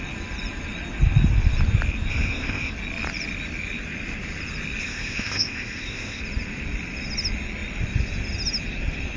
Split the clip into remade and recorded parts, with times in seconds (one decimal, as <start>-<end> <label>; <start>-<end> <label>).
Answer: 0.0-2.1 recorded; 2.1-2.7 remade; 2.7-4.8 recorded; 4.8-6.2 remade; 6.2-9.2 recorded